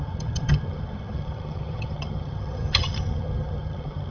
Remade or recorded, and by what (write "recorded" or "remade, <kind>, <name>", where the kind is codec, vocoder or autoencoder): remade, vocoder, HiFi-GAN